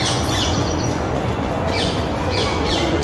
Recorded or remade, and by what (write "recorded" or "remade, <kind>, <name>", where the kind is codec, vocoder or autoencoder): remade, vocoder, Vocos